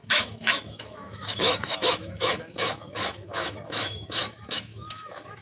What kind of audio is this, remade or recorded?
remade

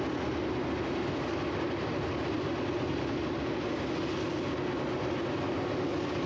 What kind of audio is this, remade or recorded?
recorded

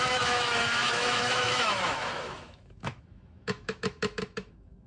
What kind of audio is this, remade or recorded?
remade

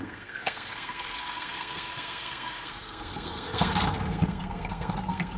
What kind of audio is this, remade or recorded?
remade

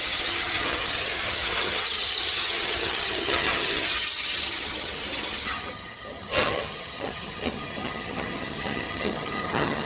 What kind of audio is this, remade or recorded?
remade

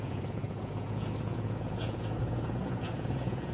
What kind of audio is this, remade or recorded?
remade